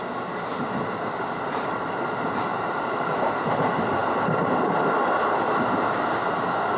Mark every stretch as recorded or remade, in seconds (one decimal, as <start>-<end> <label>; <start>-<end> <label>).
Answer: 0.0-2.5 recorded; 2.5-3.0 remade; 3.0-6.8 recorded